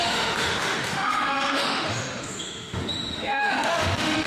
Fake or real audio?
fake